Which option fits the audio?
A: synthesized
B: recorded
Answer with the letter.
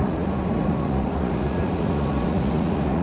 A